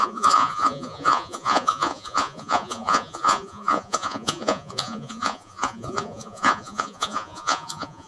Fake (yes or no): yes